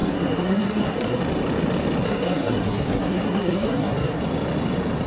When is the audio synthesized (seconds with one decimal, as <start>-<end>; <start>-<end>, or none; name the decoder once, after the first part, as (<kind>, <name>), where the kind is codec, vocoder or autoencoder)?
0.0-1.2 (codec, SNAC); 2.0-4.2